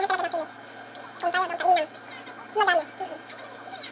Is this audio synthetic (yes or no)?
no